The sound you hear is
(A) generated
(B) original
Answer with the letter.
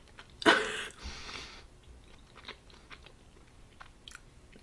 B